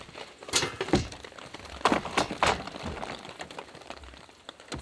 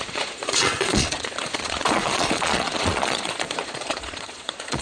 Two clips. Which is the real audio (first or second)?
first